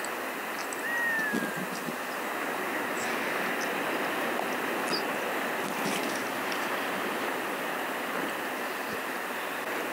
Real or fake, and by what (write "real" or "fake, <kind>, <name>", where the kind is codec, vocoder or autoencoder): real